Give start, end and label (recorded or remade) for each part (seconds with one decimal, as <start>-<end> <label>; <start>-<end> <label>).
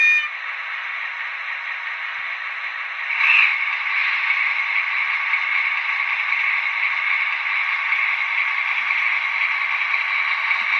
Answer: 0.0-10.8 recorded